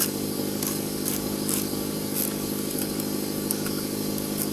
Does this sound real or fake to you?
fake